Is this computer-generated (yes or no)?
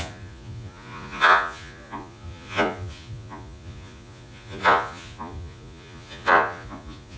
yes